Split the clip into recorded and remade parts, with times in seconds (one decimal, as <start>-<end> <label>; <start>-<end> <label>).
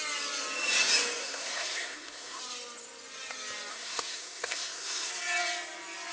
0.0-1.2 recorded; 1.2-2.4 remade; 2.4-3.7 recorded; 3.7-5.1 remade; 5.1-6.1 recorded